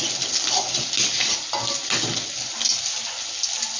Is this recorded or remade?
recorded